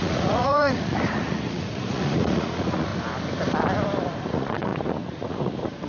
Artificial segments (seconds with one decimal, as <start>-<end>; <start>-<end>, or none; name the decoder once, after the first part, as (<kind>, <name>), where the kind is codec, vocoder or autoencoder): 0.0-2.9 (vocoder, Vocos); 4.3-5.9